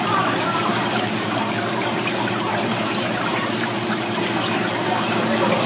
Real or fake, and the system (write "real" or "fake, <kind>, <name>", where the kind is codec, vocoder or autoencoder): fake, vocoder, BigVGAN v2